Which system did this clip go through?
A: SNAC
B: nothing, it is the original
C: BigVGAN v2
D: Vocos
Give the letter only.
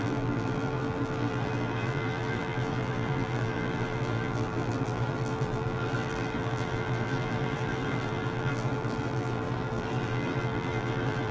C